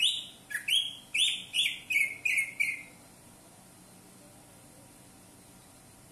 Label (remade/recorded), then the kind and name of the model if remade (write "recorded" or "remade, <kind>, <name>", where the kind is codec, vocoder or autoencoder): recorded